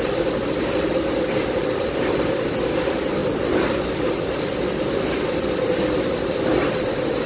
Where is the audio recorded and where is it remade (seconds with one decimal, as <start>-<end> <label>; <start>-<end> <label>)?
0.0-7.3 recorded